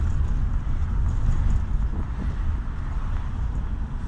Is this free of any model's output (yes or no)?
yes